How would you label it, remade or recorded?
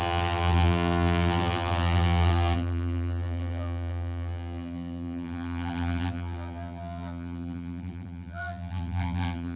remade